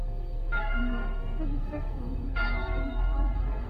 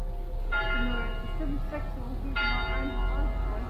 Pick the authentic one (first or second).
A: second